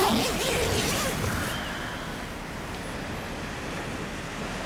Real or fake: real